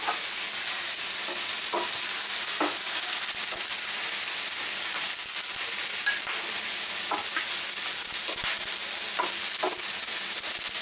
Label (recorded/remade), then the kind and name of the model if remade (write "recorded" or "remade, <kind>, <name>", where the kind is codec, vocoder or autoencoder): recorded